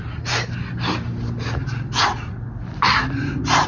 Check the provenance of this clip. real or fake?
real